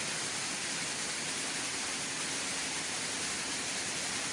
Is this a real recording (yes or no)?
yes